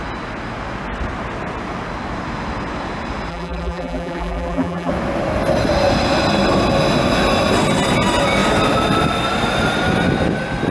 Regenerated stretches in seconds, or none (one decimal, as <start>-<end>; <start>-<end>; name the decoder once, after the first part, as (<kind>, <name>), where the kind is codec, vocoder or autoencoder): 3.3-4.9 (vocoder, BigVGAN v2)